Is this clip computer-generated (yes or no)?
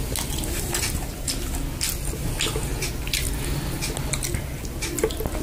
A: no